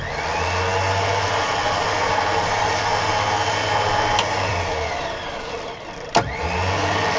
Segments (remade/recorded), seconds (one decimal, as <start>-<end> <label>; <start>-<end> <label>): 0.0-4.5 recorded; 4.5-6.4 remade; 6.4-7.2 recorded